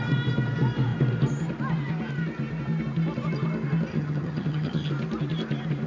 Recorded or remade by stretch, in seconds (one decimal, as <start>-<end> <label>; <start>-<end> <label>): 0.0-3.9 recorded; 3.9-4.9 remade; 4.9-5.9 recorded